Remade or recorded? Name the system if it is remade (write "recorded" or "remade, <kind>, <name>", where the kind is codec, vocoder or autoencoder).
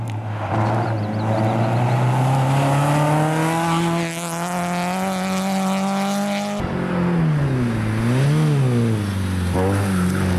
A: recorded